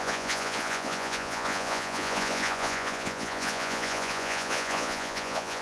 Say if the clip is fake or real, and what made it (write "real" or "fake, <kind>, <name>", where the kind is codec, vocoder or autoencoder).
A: fake, vocoder, Vocos